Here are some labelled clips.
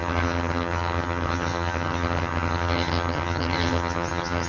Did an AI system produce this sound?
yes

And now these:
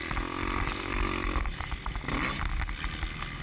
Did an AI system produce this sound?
no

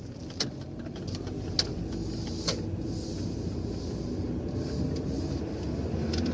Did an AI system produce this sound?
no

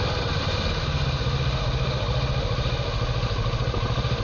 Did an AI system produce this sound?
no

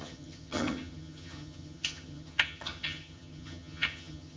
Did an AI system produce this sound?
yes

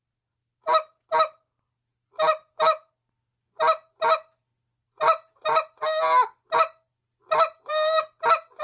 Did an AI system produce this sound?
no